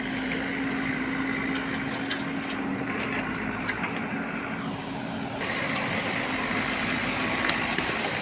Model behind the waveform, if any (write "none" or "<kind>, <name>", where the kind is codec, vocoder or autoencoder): none